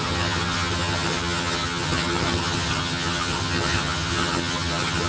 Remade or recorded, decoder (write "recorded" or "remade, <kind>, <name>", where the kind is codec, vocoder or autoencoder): remade, vocoder, HiFi-GAN